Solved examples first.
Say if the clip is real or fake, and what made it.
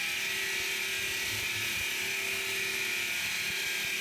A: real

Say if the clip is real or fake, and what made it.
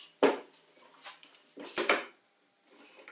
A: real